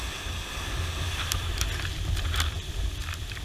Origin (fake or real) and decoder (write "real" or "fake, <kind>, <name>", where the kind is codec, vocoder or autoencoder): real